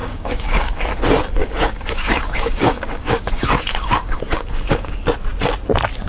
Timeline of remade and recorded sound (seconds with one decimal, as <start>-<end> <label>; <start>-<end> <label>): 0.0-0.8 remade; 0.8-1.4 recorded; 1.4-5.0 remade; 5.0-6.1 recorded